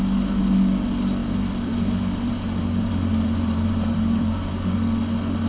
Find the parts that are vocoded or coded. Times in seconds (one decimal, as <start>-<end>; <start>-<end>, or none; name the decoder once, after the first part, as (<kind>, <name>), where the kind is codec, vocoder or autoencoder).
1.2-4.5 (vocoder, BigVGAN v2)